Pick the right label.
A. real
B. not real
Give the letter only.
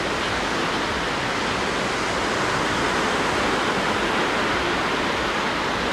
A